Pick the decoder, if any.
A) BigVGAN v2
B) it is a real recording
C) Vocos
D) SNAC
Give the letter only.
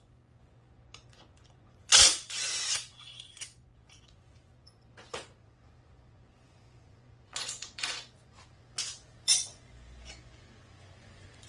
C